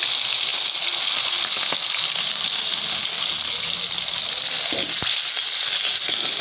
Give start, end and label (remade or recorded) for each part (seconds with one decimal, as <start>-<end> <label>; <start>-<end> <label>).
0.0-6.4 recorded